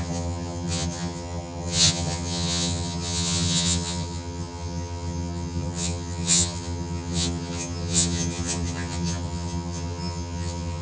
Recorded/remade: remade